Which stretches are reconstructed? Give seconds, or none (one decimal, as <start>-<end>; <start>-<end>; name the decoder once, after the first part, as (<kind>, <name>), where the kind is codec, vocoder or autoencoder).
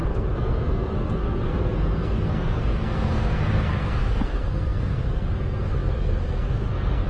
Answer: 0.0-7.1 (codec, SNAC)